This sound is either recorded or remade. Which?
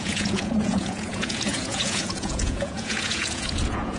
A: remade